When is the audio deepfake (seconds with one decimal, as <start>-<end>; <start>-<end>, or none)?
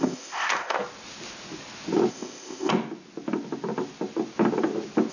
0.0-0.8; 2.1-2.7